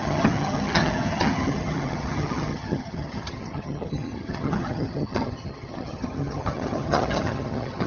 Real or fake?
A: fake